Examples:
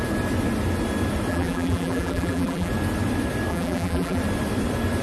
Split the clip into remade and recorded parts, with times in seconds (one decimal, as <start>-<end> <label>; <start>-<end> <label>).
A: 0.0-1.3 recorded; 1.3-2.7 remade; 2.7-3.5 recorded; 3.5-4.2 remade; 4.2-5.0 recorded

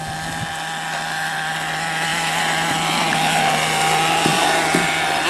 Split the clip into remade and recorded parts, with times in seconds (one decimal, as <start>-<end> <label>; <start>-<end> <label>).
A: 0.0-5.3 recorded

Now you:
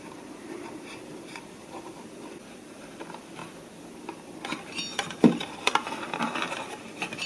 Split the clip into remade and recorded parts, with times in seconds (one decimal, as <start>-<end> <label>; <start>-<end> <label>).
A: 0.0-3.4 remade; 3.4-4.0 recorded; 4.0-7.3 remade

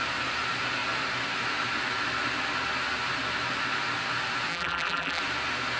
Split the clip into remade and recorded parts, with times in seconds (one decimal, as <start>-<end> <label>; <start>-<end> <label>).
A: 0.0-4.5 recorded; 4.5-5.2 remade; 5.2-5.8 recorded

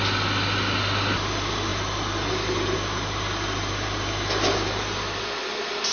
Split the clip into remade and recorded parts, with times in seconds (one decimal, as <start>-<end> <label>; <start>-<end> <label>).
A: 0.0-5.9 recorded

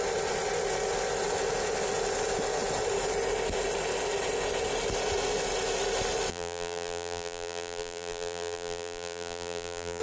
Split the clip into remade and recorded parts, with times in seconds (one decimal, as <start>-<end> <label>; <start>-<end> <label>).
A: 0.0-6.3 recorded; 6.3-10.0 remade

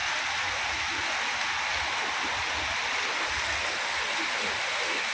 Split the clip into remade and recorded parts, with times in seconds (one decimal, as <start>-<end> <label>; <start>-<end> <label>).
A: 0.0-5.1 recorded